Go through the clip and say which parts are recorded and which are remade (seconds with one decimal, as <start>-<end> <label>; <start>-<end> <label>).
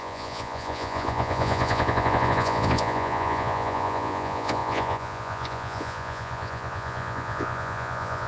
0.0-8.3 remade